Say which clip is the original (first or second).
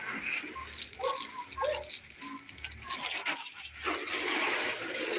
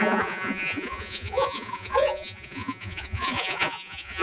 first